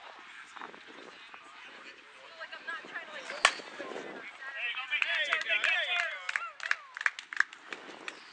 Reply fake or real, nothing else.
real